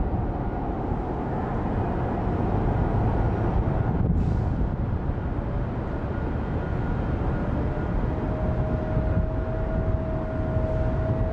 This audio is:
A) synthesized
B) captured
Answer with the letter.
B